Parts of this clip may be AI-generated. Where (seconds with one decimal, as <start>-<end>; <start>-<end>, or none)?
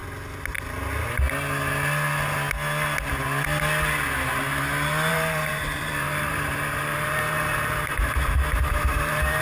5.1-9.4